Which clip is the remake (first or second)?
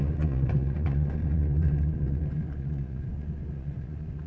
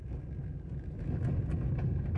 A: first